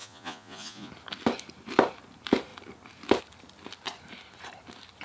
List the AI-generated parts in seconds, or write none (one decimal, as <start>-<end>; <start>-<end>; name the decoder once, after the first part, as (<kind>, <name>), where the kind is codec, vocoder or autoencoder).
0.0-0.9 (vocoder, Vocos)